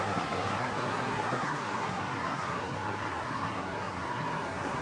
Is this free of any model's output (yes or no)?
no